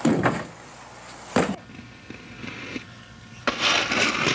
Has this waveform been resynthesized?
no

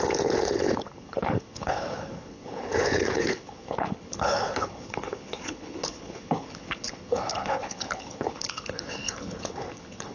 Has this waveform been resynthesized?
yes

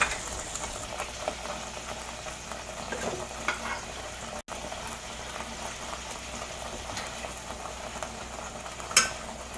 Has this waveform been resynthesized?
no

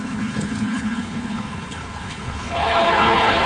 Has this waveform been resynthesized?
yes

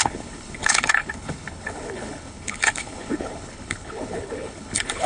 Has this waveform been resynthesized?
yes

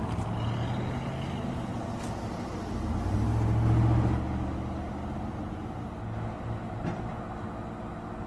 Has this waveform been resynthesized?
no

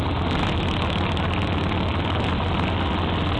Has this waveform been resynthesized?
no